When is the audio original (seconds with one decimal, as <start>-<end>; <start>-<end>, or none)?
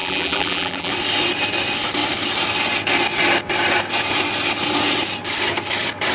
0.9-6.1